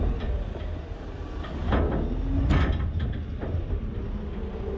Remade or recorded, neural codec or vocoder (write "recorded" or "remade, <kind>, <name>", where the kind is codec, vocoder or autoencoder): recorded